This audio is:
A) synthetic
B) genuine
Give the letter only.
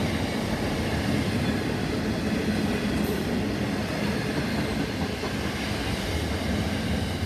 B